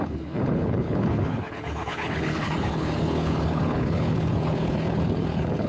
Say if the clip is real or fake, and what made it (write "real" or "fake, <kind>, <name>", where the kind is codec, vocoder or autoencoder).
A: fake, codec, HILCodec